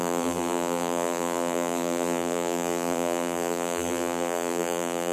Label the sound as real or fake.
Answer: fake